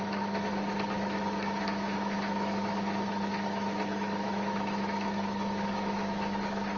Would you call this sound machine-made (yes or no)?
yes